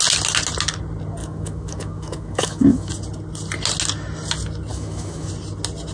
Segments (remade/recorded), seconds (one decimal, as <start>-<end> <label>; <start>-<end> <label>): 0.0-1.2 recorded; 1.2-2.9 remade; 2.9-4.7 recorded; 4.7-5.3 remade; 5.3-5.9 recorded